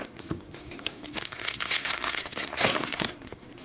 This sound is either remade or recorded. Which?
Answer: remade